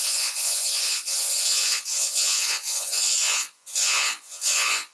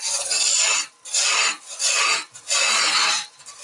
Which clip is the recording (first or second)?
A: second